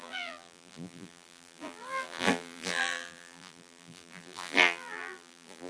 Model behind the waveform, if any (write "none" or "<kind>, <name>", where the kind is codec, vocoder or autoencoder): vocoder, BigVGAN v2